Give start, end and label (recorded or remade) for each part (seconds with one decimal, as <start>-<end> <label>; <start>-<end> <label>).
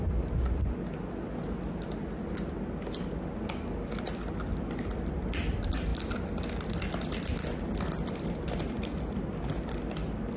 0.0-10.4 recorded